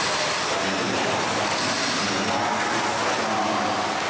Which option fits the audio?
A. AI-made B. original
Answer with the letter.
B